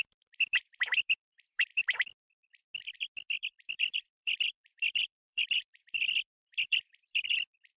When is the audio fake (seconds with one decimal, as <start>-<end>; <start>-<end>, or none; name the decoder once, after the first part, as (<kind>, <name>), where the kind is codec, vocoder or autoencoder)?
0.0-1.7 (vocoder, BigVGAN v2); 3.4-7.8